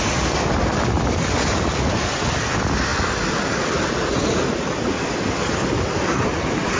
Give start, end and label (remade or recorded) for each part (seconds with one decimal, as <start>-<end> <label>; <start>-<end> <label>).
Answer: 0.0-6.8 recorded